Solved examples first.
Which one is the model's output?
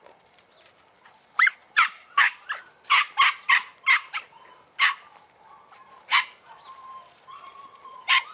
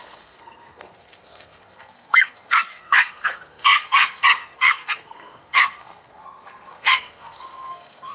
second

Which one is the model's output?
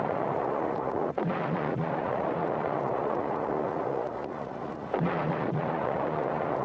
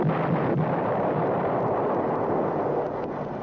first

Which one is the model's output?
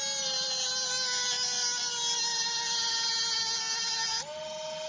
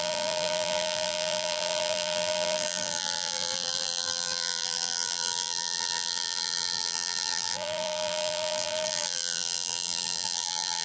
second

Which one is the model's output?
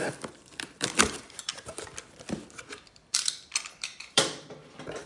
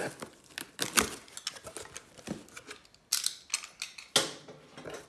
first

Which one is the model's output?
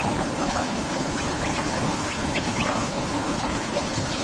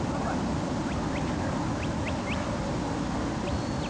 first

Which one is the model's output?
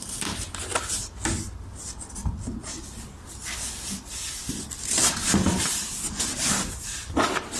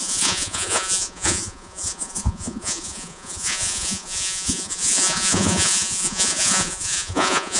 second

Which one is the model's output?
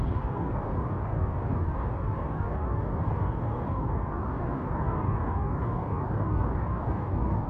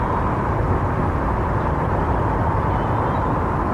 first